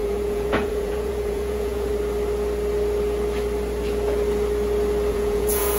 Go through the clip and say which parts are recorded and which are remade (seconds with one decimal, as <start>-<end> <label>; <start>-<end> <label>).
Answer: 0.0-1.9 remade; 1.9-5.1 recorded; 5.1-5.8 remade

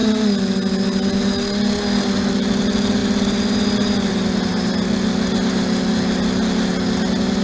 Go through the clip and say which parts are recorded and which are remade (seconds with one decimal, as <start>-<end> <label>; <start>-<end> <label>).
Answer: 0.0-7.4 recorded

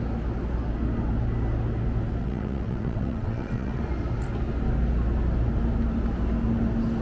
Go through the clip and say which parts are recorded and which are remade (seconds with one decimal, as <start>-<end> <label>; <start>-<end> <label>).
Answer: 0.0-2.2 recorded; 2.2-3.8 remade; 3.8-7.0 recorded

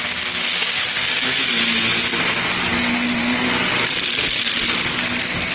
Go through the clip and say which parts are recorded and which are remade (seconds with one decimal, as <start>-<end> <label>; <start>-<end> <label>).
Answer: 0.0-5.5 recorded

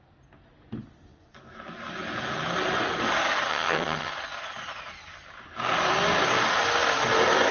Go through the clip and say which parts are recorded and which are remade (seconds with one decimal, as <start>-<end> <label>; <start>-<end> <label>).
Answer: 0.0-3.5 recorded; 3.5-4.1 remade; 4.1-7.5 recorded

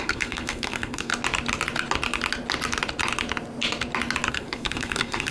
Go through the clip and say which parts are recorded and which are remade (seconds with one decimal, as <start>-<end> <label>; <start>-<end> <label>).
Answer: 0.0-1.1 remade; 1.1-4.3 recorded; 4.3-5.3 remade

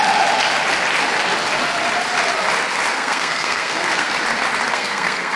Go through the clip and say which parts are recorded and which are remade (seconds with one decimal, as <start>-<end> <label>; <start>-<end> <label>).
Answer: 0.0-2.9 recorded; 2.9-4.1 remade; 4.1-4.7 recorded; 4.7-5.4 remade

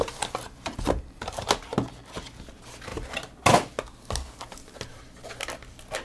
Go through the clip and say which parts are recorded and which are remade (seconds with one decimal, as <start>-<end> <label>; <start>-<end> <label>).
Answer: 0.0-1.5 remade; 1.5-6.0 recorded